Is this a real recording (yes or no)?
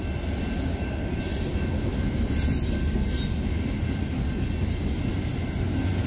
yes